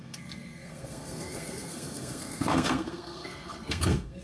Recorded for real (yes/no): no